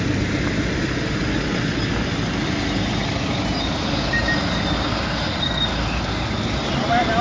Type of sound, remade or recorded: recorded